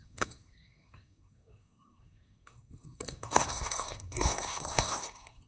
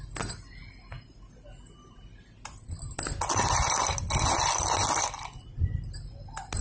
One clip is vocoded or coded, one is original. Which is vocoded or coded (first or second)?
first